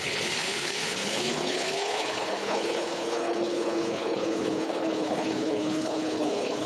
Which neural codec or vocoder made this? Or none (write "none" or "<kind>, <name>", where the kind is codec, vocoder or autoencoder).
codec, HILCodec